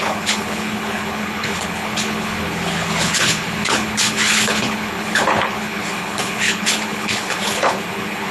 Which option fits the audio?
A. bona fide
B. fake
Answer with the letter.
B